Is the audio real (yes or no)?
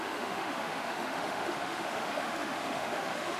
no